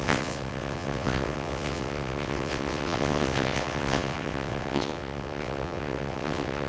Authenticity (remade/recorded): remade